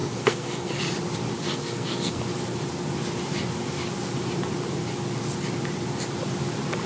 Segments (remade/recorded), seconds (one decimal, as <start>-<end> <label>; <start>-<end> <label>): 0.0-0.8 remade; 0.8-1.4 recorded; 1.4-2.2 remade; 2.2-6.9 recorded